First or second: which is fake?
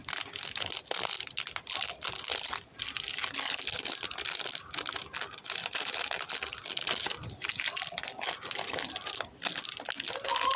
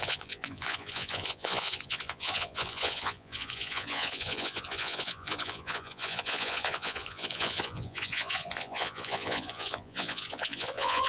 second